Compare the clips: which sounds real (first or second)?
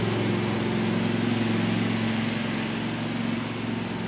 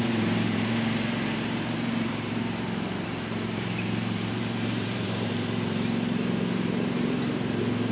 first